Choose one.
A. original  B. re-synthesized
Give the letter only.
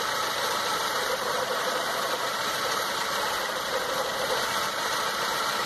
B